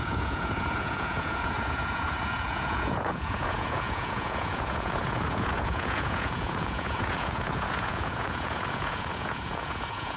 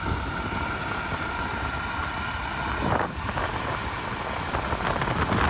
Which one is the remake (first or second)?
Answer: first